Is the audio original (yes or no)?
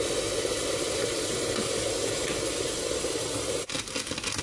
yes